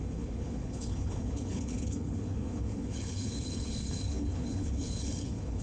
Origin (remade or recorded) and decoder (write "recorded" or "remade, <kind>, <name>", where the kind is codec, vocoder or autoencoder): remade, codec, HILCodec